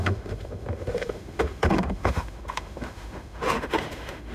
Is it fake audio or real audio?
fake